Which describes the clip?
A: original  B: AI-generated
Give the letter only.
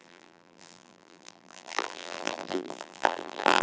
B